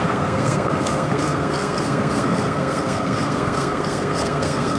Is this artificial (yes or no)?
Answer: yes